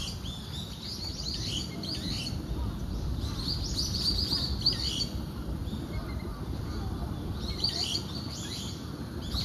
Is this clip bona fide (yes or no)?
yes